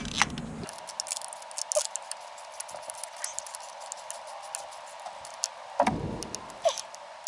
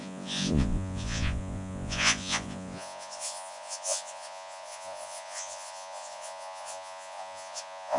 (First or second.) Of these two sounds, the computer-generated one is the second